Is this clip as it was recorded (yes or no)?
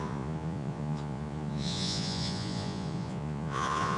no